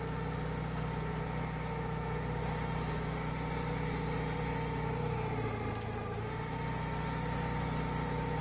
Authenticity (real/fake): real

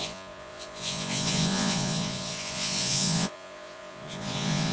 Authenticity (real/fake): fake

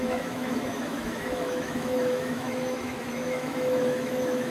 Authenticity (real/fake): fake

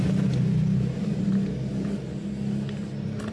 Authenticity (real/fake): real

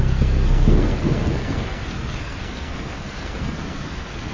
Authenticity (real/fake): fake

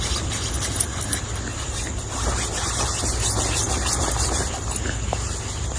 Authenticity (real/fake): real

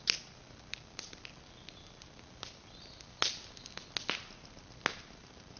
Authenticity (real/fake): real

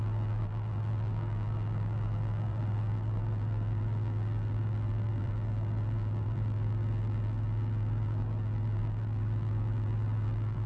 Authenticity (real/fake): fake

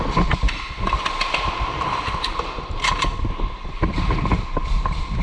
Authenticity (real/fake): real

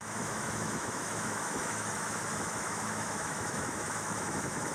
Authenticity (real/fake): fake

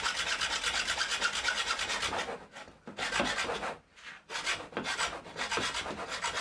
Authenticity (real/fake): real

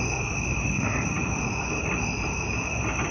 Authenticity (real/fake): fake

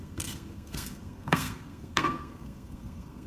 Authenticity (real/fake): fake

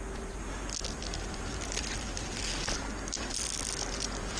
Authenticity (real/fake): real